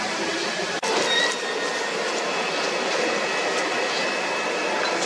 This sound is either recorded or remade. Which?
recorded